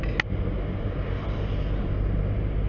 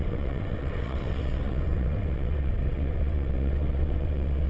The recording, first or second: first